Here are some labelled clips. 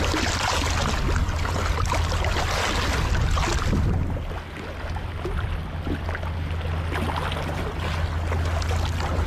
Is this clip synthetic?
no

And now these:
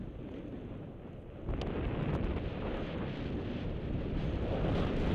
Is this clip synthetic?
no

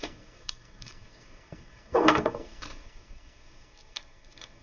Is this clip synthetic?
yes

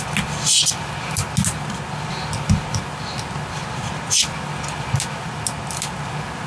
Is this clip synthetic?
no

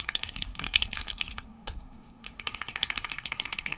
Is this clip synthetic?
yes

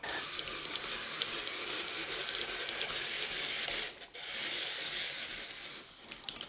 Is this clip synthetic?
no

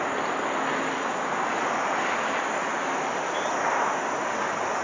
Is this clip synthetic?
no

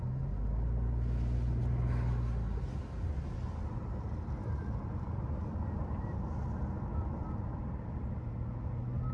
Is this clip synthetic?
no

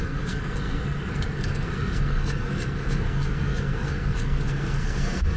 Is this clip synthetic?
yes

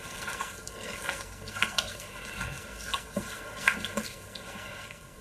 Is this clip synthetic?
yes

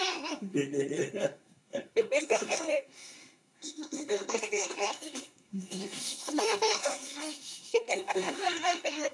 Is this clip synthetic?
yes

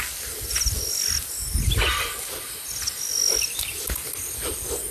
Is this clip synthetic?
no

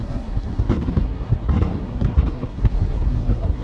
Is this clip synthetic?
yes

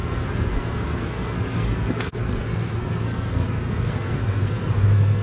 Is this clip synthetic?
yes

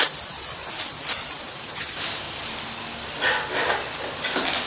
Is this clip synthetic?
no